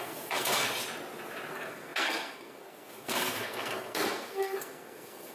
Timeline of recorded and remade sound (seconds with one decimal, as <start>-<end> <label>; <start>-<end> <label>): 0.0-0.7 remade; 0.7-1.5 recorded; 1.5-5.3 remade